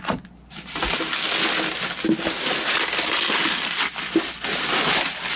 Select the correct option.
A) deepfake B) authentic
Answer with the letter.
B